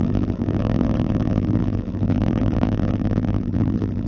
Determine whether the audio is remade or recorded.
remade